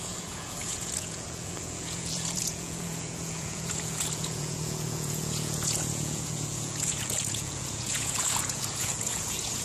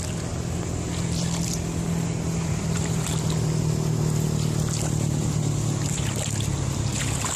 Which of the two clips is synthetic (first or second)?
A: first